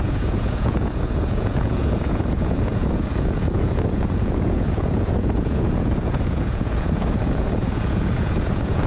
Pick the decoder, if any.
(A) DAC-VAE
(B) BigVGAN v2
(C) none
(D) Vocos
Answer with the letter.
D